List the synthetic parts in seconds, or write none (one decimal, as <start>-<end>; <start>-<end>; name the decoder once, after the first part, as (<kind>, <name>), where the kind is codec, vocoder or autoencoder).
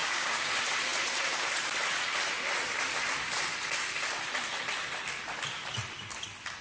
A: 0.0-0.5 (codec, DAC)